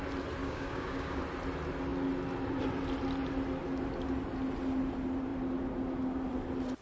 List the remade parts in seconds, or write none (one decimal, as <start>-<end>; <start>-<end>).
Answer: 0.4-1.2

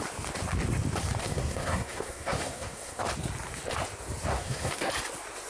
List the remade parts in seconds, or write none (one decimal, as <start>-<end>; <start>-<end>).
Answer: 1.2-3.0; 4.3-4.9

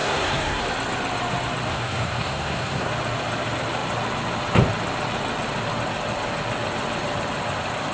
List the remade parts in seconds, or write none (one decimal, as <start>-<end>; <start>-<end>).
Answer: 0.0-0.6; 1.7-2.9

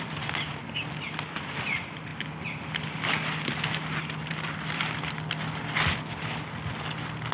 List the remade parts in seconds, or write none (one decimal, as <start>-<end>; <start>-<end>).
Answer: none

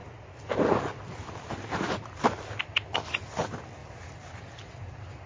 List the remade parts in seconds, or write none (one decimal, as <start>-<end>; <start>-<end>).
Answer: none

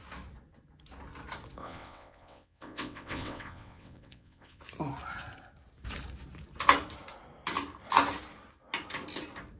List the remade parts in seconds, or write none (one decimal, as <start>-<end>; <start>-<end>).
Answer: 1.6-4.6